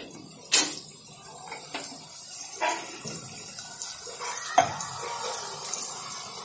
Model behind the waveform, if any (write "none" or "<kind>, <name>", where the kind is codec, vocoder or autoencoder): none